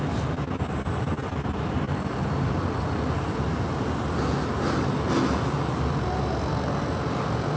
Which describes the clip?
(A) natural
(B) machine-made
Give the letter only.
A